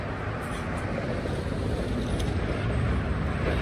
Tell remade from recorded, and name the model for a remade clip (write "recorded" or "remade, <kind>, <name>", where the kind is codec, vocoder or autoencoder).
recorded